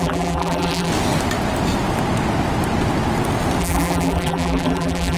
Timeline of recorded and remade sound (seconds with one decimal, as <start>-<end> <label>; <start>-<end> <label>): 0.0-0.9 remade; 0.9-3.6 recorded; 3.6-5.2 remade